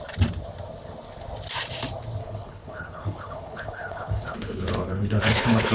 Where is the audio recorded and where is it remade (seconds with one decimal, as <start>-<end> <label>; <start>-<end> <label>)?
0.0-2.2 recorded; 2.2-5.7 remade